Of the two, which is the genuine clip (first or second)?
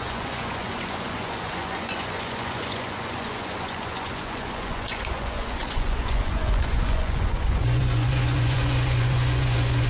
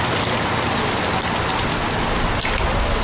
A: second